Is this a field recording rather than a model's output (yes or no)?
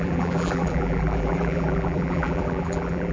no